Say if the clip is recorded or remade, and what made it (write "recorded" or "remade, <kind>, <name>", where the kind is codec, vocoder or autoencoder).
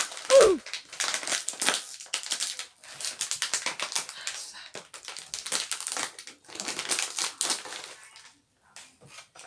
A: recorded